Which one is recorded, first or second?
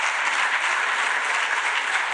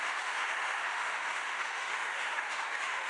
first